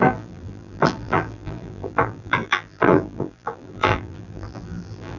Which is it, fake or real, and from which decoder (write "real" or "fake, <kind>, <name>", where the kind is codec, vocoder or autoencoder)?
fake, vocoder, BigVGAN v2